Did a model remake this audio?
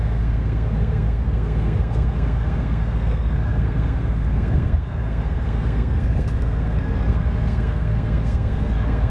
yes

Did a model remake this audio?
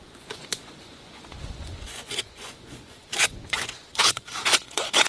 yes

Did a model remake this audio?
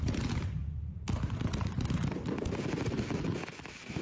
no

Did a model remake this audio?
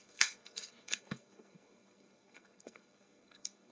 yes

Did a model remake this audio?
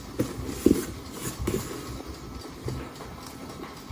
no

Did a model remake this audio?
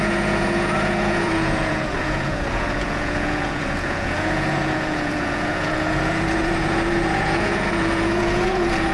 yes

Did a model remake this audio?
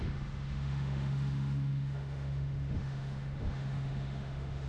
yes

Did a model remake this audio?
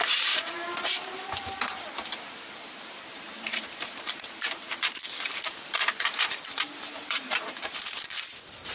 yes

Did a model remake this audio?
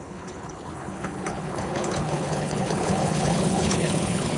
yes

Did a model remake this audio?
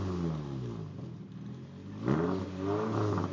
no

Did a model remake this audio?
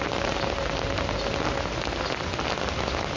no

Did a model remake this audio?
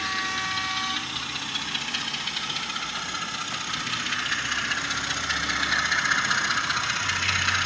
no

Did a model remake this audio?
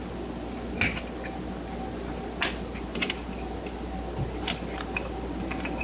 no